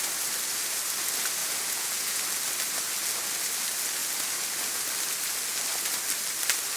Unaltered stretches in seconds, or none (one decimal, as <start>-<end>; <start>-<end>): 0.0-1.4; 2.2-6.8